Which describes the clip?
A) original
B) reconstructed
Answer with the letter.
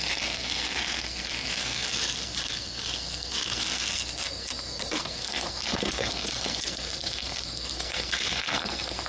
B